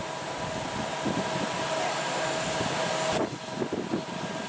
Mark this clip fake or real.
real